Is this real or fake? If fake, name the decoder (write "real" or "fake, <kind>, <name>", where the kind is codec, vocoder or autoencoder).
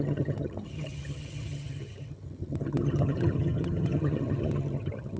fake, vocoder, HiFi-GAN